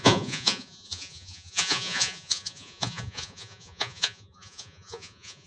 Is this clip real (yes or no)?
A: no